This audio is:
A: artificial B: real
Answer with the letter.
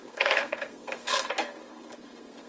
A